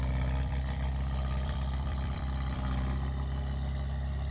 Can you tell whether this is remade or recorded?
remade